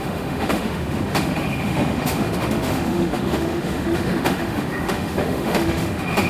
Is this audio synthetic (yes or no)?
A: yes